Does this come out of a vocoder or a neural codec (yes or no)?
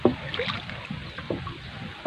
no